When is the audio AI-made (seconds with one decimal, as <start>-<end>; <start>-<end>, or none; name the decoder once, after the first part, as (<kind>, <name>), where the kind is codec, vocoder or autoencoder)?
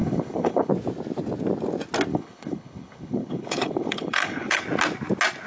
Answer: 0.0-0.7 (codec, HILCodec); 2.1-4.6